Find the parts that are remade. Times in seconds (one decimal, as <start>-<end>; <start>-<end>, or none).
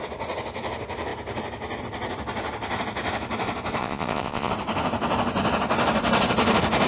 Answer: 3.8-4.5